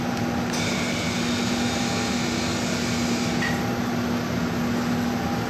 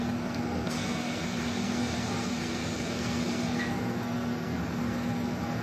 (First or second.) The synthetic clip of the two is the second